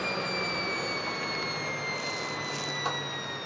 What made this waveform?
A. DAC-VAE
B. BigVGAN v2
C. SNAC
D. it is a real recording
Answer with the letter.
D